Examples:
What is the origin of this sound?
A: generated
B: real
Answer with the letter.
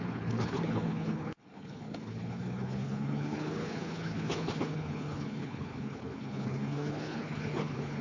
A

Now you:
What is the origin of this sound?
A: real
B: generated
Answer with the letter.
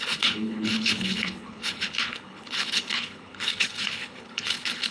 B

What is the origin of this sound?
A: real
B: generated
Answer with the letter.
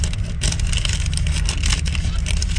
A